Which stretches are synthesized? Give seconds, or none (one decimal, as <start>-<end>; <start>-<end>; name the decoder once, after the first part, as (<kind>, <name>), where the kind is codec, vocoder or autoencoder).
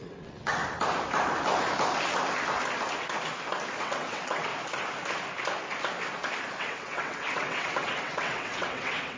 0.0-0.6 (vocoder, WaveNeXt); 3.8-4.5; 6.6-9.2